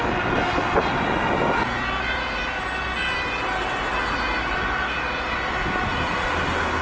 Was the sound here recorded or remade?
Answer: recorded